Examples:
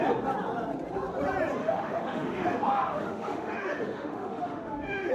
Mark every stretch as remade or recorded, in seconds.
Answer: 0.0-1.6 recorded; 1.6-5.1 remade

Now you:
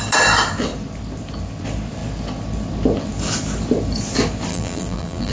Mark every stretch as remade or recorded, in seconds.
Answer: 0.0-4.5 recorded; 4.5-5.3 remade